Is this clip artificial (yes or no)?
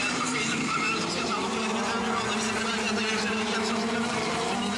yes